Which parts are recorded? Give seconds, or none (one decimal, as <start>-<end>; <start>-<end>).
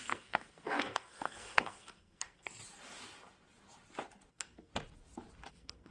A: 2.6-4.3; 4.7-5.5